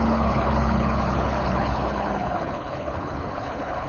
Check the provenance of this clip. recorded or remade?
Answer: remade